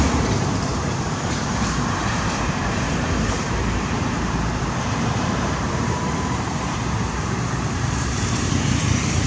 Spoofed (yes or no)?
yes